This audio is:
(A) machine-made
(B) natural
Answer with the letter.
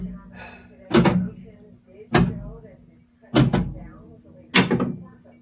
B